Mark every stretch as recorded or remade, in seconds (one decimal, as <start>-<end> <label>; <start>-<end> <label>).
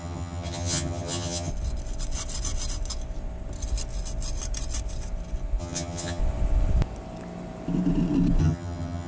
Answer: 0.0-1.5 remade; 1.5-5.6 recorded; 5.6-6.2 remade; 6.2-8.4 recorded; 8.4-9.1 remade